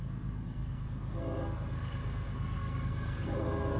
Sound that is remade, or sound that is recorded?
remade